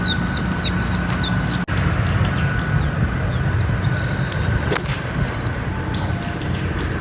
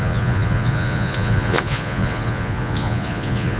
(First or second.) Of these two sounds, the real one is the first